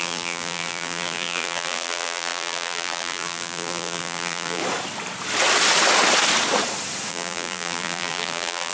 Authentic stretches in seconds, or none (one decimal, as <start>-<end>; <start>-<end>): 4.6-7.1